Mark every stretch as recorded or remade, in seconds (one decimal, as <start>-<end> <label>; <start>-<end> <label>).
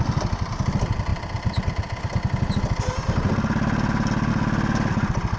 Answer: 0.0-5.4 recorded